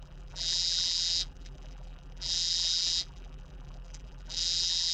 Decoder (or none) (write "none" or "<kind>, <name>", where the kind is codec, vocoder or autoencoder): vocoder, BigVGAN v2